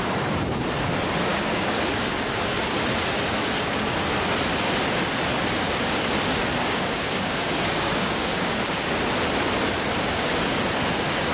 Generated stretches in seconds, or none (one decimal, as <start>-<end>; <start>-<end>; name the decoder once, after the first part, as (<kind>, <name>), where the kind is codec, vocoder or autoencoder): 1.3-2.6 (codec, DAC); 6.5-8.5; 9.9-10.6